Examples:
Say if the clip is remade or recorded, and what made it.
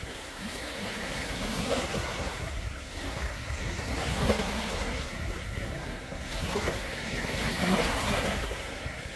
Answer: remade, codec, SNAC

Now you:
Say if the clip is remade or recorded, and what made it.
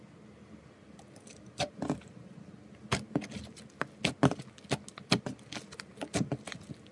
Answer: recorded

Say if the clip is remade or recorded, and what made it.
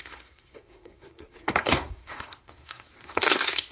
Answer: remade, codec, SNAC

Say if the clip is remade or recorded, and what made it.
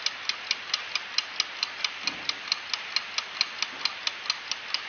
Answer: recorded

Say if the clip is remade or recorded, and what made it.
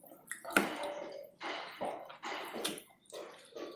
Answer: recorded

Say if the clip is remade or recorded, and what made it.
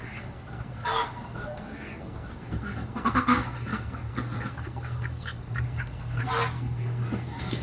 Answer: remade, codec, SNAC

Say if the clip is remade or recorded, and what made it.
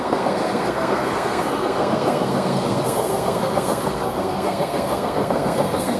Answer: remade, codec, SNAC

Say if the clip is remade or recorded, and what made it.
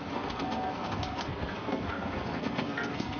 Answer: remade, codec, SNAC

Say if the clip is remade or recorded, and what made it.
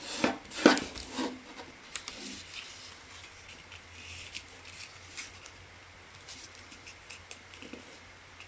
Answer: recorded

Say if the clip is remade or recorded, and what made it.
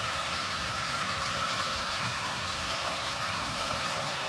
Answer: remade, codec, SNAC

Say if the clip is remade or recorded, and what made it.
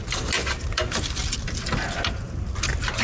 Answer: recorded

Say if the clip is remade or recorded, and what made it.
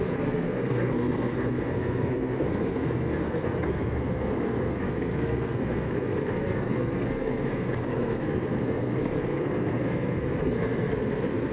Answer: remade, codec, SNAC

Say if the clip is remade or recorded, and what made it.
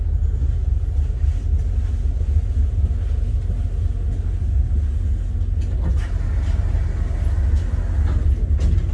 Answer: recorded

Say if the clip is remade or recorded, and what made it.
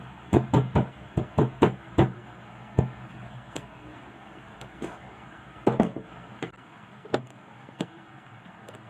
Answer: remade, codec, SNAC